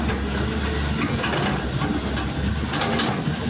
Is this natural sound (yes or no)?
yes